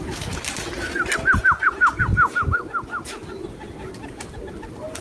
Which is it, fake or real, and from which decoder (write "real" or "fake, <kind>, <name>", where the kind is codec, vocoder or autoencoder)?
real